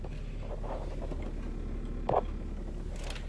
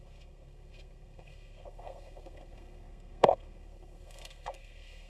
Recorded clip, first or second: first